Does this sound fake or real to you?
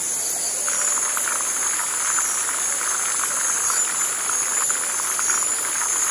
real